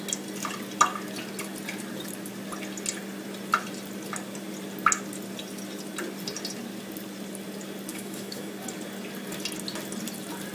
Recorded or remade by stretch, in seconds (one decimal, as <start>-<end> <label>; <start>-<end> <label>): 0.0-7.9 recorded; 7.9-8.5 remade; 8.5-10.5 recorded